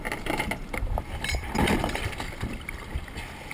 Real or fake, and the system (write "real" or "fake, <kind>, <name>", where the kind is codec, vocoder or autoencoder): real